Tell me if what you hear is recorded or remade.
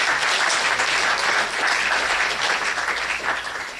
recorded